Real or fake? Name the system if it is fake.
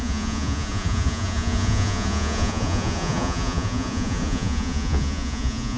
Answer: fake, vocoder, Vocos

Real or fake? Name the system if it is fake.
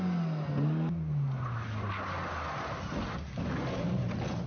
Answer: real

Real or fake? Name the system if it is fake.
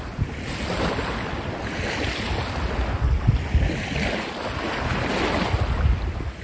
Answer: real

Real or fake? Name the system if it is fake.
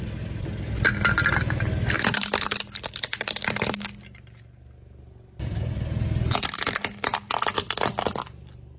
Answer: real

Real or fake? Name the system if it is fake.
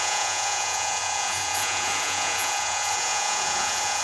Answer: fake, vocoder, Vocos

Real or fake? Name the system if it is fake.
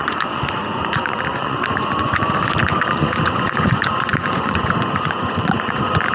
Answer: fake, vocoder, Vocos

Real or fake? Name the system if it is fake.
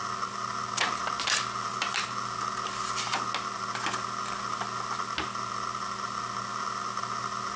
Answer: real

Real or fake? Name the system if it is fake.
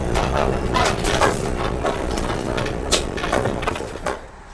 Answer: fake, vocoder, Vocos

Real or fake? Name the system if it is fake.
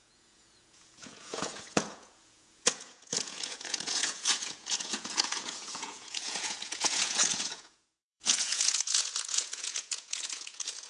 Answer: fake, vocoder, Vocos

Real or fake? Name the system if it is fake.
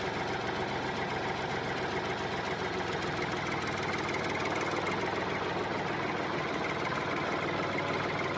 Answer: real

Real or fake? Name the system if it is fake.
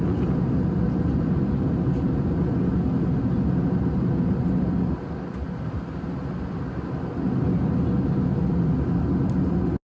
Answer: real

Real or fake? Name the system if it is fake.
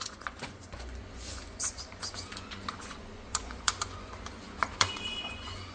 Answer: fake, vocoder, Vocos